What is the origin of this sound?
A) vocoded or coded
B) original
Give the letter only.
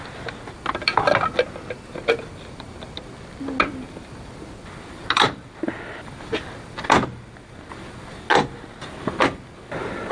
B